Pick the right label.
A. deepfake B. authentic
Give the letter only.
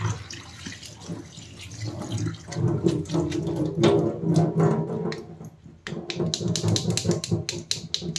B